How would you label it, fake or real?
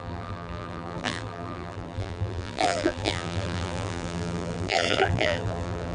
fake